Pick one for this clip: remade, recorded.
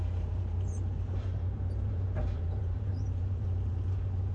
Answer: remade